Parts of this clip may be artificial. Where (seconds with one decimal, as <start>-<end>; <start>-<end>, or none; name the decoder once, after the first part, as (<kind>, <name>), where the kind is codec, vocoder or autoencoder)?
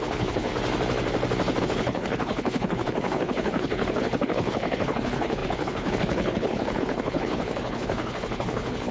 0.0-0.5 (codec, HILCodec); 1.6-8.9